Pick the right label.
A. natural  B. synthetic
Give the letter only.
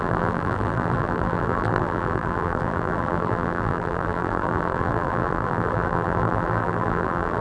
B